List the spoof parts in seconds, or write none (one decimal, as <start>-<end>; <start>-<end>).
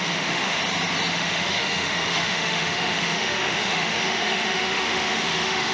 0.0-0.6; 1.1-5.7